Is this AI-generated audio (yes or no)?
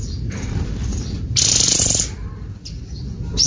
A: no